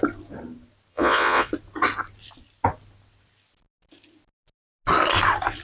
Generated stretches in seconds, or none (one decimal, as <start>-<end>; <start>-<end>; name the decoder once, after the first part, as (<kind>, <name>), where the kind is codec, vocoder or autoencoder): 0.9-1.5 (vocoder, Vocos)